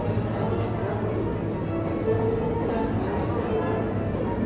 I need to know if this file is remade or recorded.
recorded